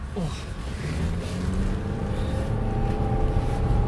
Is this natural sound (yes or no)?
yes